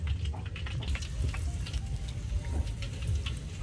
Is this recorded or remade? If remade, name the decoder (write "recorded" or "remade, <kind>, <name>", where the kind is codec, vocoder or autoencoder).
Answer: recorded